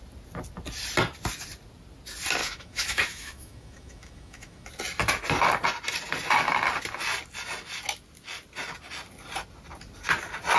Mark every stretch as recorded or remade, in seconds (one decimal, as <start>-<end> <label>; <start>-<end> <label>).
0.0-2.4 recorded; 2.4-4.7 remade; 4.7-10.6 recorded